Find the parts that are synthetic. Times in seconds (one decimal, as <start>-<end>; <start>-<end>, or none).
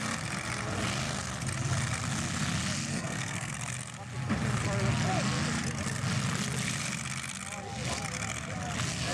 2.9-3.5